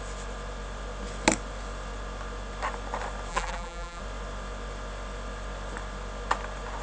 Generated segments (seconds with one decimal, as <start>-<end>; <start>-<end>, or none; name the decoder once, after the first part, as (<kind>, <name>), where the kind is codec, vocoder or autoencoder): 3.3-4.0 (vocoder, BigVGAN v2)